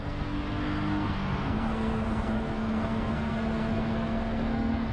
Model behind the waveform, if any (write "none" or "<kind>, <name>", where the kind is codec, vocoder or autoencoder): codec, SNAC